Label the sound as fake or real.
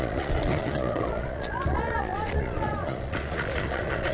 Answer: fake